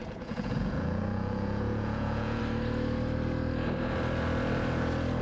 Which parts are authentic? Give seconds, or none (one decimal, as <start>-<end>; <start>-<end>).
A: 2.4-5.2